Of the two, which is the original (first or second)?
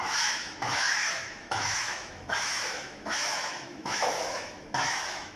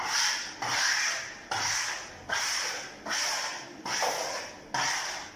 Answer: second